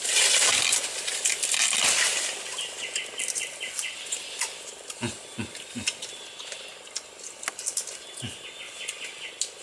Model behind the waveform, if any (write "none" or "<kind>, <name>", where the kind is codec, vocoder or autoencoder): none